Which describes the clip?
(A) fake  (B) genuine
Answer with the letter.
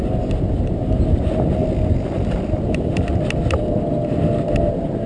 B